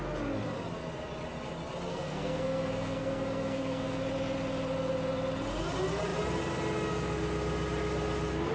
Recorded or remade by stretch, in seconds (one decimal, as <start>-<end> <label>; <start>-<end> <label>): 0.0-1.9 recorded; 1.9-4.0 remade; 4.0-8.5 recorded